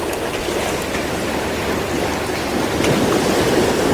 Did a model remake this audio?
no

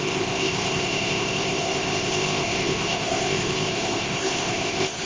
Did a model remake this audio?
yes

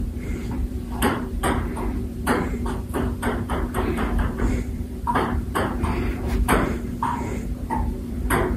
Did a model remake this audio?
yes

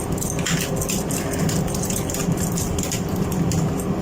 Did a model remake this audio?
no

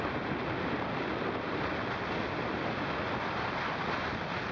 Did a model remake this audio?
no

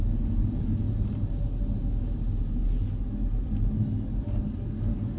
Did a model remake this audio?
no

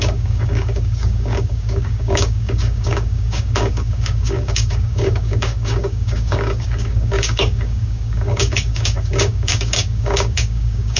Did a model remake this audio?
yes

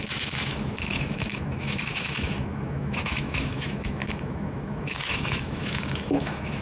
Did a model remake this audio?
yes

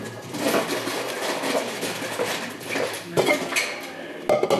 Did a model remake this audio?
no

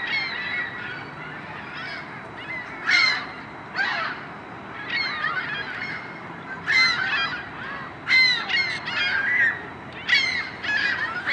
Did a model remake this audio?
no